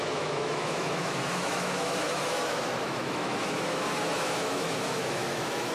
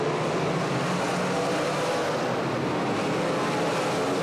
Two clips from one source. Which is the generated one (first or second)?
first